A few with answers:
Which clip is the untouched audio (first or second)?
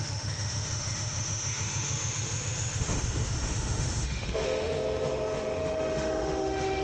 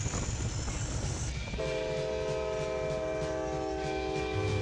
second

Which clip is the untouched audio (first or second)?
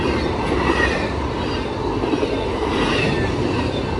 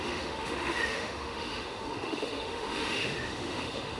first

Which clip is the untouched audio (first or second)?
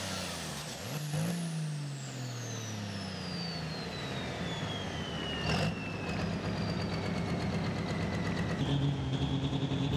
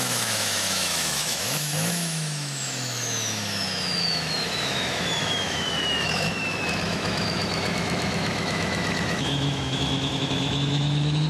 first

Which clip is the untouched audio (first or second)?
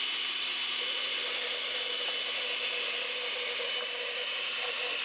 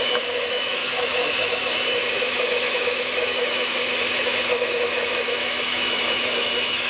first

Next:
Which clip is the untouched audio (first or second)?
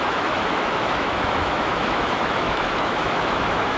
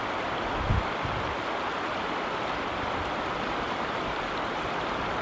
second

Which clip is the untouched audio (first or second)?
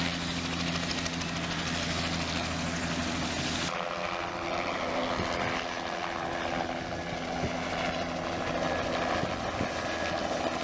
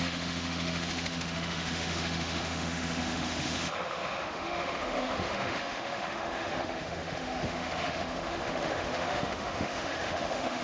first